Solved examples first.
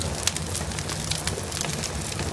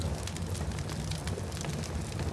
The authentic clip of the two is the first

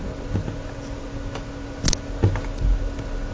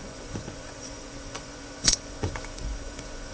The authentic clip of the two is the first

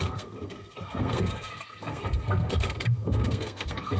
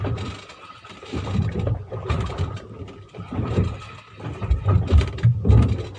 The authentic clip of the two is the second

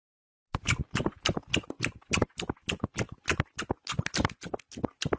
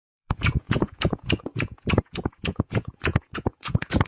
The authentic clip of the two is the first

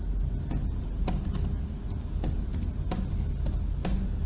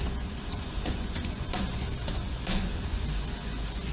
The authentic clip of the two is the first